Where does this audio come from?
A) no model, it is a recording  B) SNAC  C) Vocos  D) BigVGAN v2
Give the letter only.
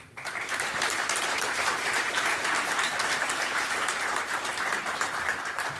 D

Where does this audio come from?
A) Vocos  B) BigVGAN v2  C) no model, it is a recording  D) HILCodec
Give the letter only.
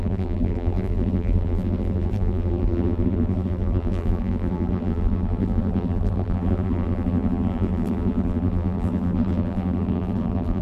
B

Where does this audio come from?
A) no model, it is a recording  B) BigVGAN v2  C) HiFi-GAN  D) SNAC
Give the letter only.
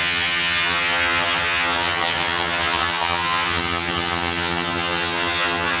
C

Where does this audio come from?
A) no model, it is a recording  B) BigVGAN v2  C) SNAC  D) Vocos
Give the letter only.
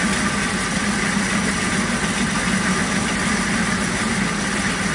A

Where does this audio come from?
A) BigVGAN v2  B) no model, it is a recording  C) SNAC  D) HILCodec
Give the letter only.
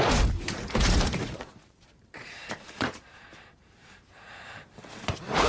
A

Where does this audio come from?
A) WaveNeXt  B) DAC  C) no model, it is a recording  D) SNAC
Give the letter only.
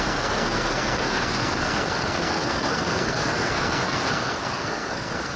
D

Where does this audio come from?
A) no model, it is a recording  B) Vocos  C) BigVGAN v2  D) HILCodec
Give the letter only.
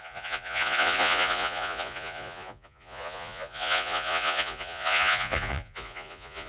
B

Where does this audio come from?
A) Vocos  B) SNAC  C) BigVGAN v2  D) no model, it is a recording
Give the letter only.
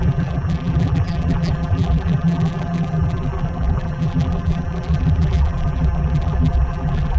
C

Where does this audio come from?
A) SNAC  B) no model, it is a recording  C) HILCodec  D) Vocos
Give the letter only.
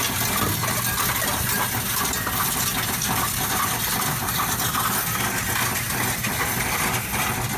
B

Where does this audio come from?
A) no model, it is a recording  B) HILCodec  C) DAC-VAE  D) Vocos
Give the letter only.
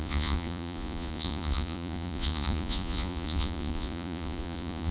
D